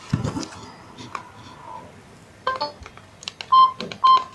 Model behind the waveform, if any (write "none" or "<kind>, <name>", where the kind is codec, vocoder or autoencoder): none